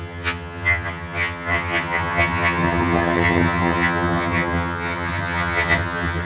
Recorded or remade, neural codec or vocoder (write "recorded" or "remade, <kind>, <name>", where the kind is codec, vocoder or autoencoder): remade, vocoder, HiFi-GAN